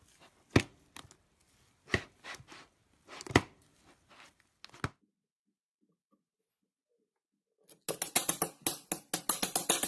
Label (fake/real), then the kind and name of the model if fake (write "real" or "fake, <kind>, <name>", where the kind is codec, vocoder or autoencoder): real